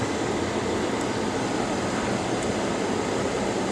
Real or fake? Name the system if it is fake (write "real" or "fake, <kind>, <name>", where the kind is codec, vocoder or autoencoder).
real